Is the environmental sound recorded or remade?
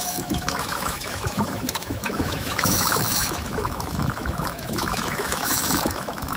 remade